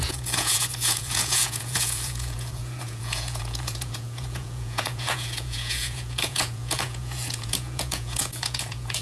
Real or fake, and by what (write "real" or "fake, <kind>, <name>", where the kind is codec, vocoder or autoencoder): fake, vocoder, Vocos